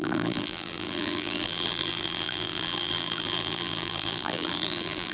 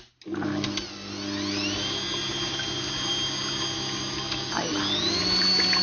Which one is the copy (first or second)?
first